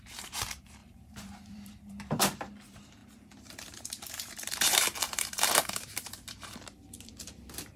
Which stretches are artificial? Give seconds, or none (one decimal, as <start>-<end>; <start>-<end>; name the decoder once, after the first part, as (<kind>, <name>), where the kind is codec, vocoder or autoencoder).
0.0-3.0 (vocoder, BigVGAN v2); 4.1-7.8